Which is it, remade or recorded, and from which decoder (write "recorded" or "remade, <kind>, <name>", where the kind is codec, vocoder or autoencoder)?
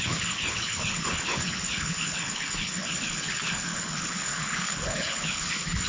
remade, codec, HILCodec